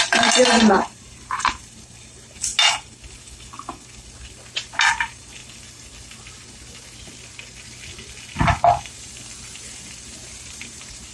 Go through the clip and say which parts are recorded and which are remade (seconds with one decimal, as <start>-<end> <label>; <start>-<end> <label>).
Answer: 0.0-2.5 remade; 2.5-4.9 recorded; 4.9-5.4 remade; 5.4-8.8 recorded; 8.8-11.1 remade